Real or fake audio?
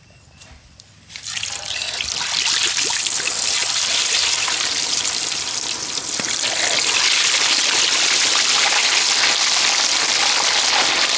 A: real